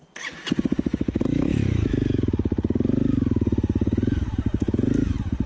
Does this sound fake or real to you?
real